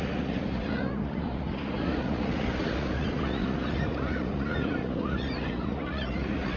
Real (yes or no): no